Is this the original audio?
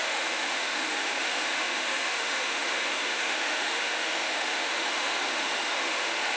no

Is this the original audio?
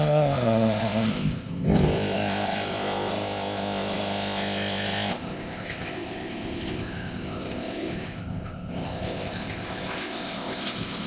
no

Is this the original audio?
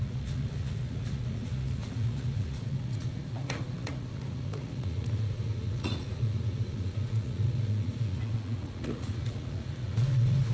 no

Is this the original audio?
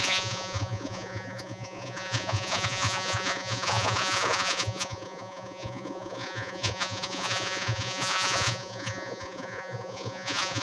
no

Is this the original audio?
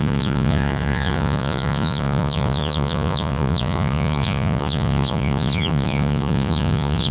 no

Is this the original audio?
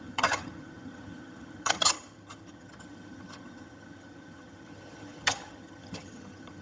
no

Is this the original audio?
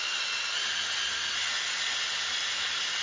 yes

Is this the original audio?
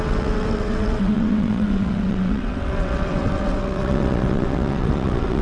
no